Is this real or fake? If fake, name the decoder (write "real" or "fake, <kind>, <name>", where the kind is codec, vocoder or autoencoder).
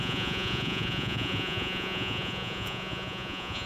fake, vocoder, Vocos